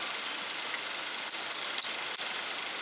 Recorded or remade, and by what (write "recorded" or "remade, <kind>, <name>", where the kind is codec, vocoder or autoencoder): recorded